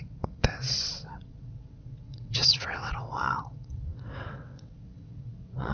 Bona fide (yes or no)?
no